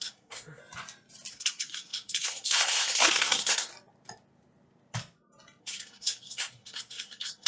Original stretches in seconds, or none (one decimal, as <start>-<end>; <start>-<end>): 0.6-1.3; 3.7-5.6